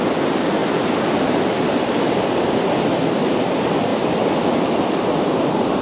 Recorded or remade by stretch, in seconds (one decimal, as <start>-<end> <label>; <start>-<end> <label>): 0.0-0.6 recorded; 0.6-2.5 remade; 2.5-3.9 recorded; 3.9-5.0 remade; 5.0-5.8 recorded